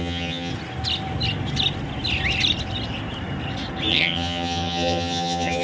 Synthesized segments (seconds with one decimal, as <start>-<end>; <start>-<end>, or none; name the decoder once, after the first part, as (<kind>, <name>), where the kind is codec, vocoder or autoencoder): 0.0-0.5 (vocoder, HiFi-GAN); 3.9-5.6